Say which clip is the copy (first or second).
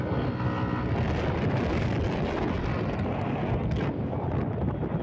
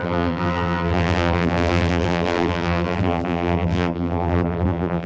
second